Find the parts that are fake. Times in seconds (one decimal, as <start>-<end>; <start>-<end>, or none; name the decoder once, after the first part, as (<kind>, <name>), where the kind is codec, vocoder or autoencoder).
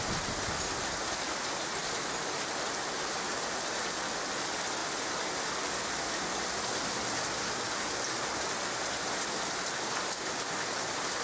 none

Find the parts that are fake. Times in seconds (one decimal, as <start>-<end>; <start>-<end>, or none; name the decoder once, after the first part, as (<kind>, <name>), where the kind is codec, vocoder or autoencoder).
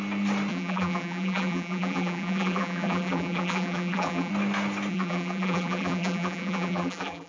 0.5-4.3 (vocoder, BigVGAN v2); 4.9-7.3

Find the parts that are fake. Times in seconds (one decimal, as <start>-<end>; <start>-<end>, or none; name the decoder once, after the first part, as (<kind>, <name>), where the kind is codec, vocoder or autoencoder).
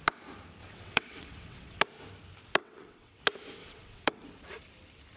0.6-1.8 (vocoder, WaveNeXt); 2.6-3.2; 3.6-4.2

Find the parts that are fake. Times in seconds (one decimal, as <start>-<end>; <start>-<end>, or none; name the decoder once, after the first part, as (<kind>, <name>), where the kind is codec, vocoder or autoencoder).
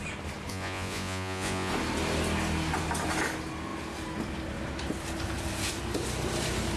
0.5-1.7 (vocoder, Vocos)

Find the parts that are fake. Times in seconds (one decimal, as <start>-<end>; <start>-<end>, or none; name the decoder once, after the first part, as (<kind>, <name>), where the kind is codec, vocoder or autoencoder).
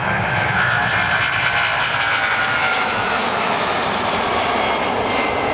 0.0-0.8 (autoencoder, DAC-VAE); 2.6-3.8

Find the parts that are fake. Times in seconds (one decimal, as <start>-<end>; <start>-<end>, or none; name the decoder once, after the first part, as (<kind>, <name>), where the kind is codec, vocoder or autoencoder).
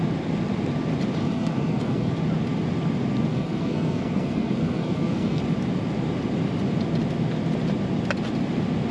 1.2-2.1 (codec, SNAC); 3.3-5.4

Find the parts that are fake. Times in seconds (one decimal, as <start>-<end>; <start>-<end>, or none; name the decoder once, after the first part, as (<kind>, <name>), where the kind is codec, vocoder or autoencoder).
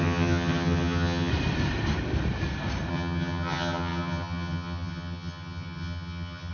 0.0-1.3 (vocoder, HiFi-GAN); 2.9-6.5